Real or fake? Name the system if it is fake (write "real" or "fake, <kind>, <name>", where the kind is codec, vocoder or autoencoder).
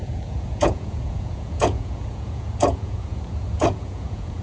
fake, vocoder, Vocos